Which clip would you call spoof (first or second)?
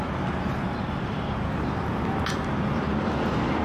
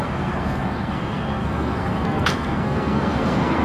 second